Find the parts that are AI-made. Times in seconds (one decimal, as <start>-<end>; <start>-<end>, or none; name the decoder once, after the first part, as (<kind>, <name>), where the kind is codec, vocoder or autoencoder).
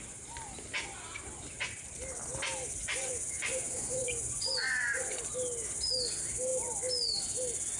2.8-5.2 (vocoder, Vocos)